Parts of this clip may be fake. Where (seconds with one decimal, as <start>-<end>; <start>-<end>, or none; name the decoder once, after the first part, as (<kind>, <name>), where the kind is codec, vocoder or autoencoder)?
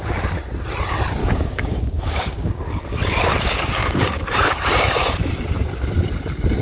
1.2-2.5 (codec, DAC); 3.8-5.3